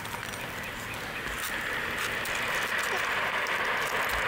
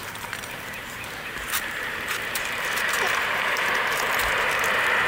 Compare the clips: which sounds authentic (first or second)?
first